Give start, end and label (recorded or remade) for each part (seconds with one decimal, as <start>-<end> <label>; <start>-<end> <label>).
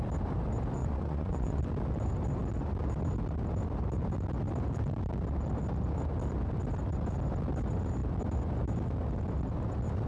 0.0-0.8 recorded; 0.8-1.6 remade; 1.6-10.1 recorded